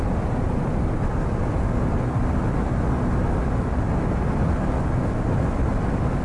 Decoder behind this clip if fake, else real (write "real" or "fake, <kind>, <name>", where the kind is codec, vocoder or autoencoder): real